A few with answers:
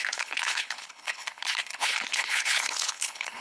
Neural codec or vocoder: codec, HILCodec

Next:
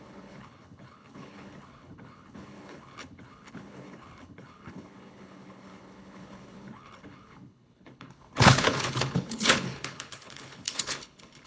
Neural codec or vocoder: codec, HILCodec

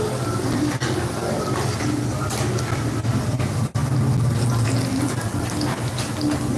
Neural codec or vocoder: none